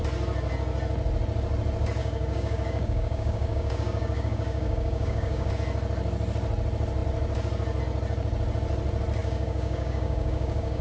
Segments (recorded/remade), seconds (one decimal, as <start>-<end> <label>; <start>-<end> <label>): 0.0-2.0 recorded; 2.0-5.5 remade; 5.5-9.2 recorded; 9.2-10.8 remade